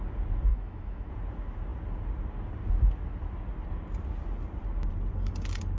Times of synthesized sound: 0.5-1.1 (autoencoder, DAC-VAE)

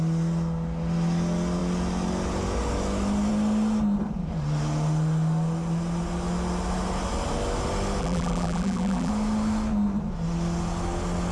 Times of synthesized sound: 8.0-9.1 (vocoder, BigVGAN v2)

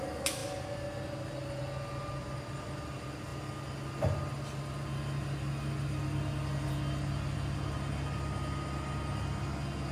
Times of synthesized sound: none

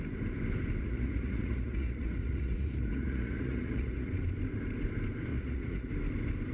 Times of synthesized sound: 0.8-4.1 (vocoder, Vocos); 5.3-5.9

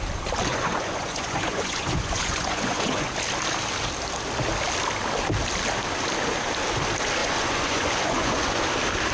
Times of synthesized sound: 0.5-3.1 (vocoder, Vocos); 7.2-8.6

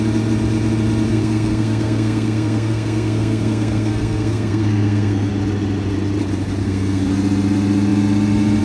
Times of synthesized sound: 1.1-5.3 (codec, SNAC); 6.6-7.1

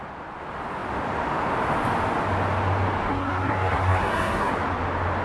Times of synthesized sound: 3.1-4.5 (codec, SNAC)

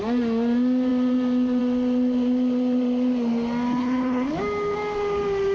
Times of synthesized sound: 3.8-4.3 (codec, HILCodec)